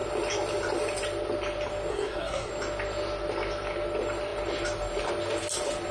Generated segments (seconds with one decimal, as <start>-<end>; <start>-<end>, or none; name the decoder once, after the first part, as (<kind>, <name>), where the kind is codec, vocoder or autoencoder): 1.9-2.5 (codec, SNAC)